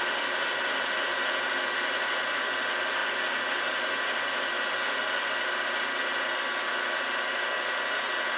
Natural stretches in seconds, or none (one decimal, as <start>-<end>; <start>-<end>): 0.0-8.4